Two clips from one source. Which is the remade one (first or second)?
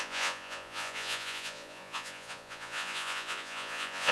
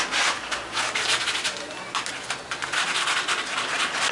first